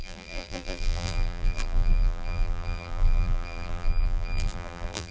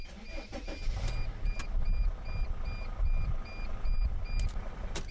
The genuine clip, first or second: second